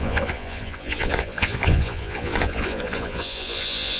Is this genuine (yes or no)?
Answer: no